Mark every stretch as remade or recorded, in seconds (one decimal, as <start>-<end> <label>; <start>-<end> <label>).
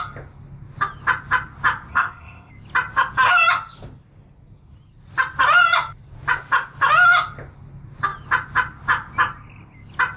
0.0-1.9 recorded; 1.9-2.5 remade; 2.5-10.2 recorded